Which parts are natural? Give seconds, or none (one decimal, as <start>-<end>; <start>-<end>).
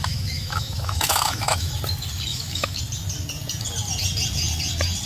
1.7-2.3; 2.8-5.1